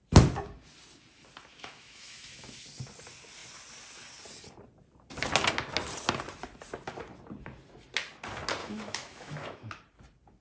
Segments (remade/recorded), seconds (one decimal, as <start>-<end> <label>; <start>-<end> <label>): 0.0-1.5 recorded; 1.5-2.5 remade; 2.5-8.6 recorded; 8.6-9.7 remade; 9.7-10.4 recorded

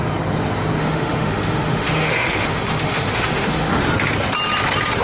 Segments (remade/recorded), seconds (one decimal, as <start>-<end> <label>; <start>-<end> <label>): 0.0-0.8 recorded; 0.8-3.8 remade; 3.8-5.0 recorded

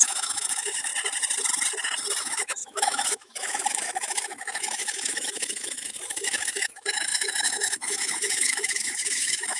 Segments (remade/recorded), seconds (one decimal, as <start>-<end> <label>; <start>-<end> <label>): 0.0-0.9 remade; 0.9-2.2 recorded; 2.2-9.6 remade

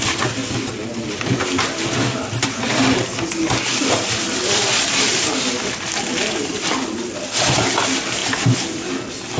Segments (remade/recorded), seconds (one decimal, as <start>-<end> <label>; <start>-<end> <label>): 0.0-9.4 recorded

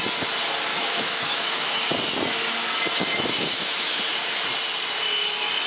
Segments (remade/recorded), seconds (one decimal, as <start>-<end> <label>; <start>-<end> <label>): 0.0-0.7 recorded; 0.7-1.7 remade; 1.7-3.5 recorded; 3.5-4.0 remade; 4.0-5.7 recorded